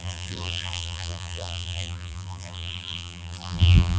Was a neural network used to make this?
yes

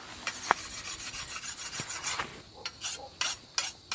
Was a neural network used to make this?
no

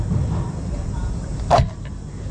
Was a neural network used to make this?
no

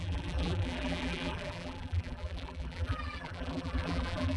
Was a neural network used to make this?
yes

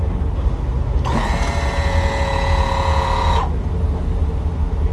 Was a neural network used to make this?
no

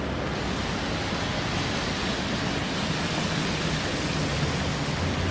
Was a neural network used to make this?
no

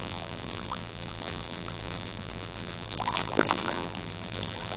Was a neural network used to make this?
yes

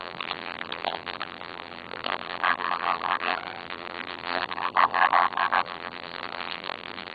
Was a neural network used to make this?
yes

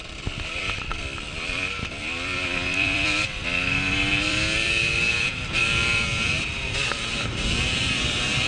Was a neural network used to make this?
yes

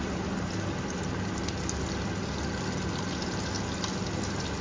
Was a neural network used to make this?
no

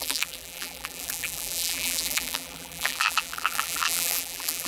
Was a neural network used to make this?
yes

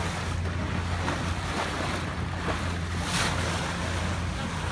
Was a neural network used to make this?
no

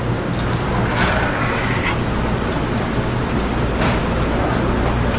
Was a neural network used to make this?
no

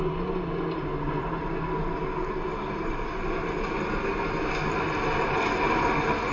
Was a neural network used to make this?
no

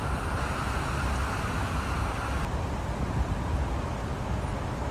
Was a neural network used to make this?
no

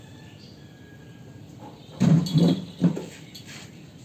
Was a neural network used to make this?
yes